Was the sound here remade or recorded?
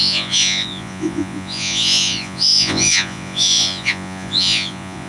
remade